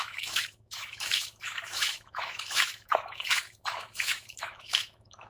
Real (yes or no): no